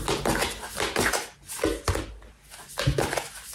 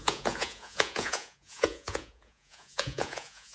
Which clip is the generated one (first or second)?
second